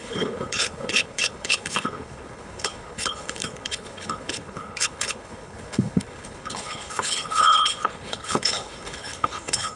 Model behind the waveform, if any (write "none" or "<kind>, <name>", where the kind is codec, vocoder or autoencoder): codec, HILCodec